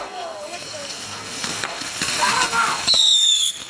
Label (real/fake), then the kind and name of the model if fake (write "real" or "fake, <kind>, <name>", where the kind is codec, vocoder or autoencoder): fake, codec, SNAC